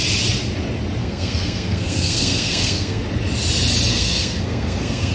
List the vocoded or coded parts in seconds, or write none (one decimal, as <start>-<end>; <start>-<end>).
1.0-3.0; 3.9-5.1